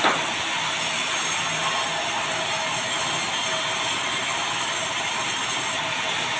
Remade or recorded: recorded